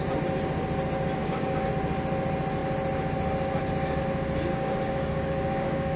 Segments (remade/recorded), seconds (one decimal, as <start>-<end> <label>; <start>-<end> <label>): 0.0-1.2 recorded; 1.2-1.7 remade; 1.7-4.5 recorded; 4.5-6.0 remade